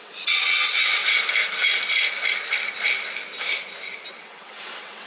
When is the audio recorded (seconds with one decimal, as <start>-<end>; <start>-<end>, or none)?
1.0-4.1